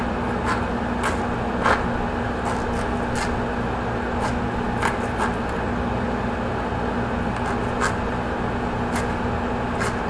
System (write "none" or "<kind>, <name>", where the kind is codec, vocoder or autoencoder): none